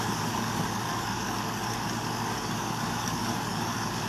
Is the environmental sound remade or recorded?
remade